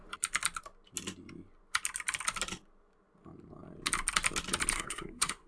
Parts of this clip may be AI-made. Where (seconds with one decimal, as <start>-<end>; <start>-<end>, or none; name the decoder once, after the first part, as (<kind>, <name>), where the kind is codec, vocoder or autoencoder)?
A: 4.7-5.5 (codec, SNAC)